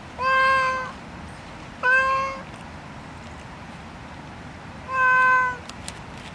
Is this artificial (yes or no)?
no